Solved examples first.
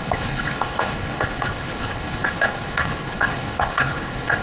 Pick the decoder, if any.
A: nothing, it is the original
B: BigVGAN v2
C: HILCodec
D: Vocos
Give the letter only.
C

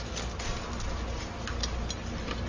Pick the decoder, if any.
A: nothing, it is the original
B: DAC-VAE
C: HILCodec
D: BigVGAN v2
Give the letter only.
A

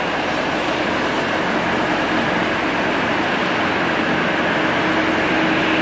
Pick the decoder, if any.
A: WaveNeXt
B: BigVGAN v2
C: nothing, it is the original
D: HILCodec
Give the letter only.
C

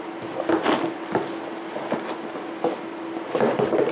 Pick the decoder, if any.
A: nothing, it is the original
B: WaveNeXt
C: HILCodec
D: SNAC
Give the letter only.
A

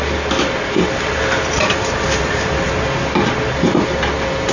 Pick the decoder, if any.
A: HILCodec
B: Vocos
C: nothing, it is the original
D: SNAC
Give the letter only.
C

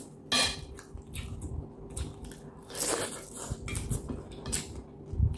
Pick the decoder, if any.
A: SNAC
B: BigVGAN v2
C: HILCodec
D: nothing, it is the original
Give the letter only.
D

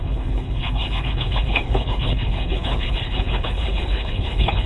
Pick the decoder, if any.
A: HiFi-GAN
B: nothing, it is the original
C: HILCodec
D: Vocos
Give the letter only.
C